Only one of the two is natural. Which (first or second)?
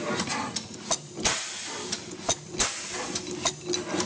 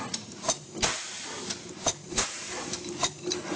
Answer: first